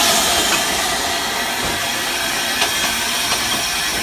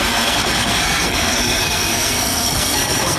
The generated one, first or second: second